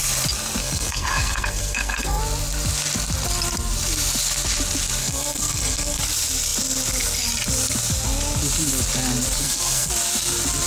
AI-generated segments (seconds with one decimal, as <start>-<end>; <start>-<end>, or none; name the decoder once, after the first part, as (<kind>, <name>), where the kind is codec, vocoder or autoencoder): 0.6-2.2 (codec, SNAC); 5.0-6.0; 9.4-9.9